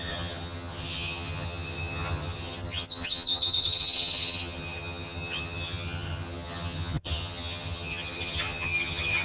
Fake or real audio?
fake